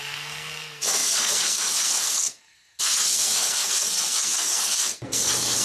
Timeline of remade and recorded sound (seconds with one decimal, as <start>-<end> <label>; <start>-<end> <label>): 0.0-5.6 remade